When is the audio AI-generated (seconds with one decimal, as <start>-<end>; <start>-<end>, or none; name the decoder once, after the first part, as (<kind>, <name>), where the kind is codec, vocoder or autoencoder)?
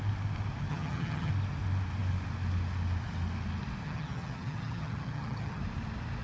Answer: 0.7-1.3 (vocoder, HiFi-GAN); 3.8-5.6